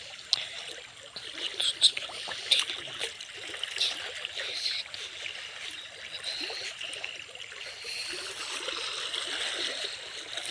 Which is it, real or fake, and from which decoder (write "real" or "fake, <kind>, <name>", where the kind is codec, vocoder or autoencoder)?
real